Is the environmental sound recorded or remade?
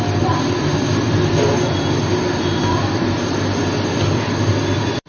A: recorded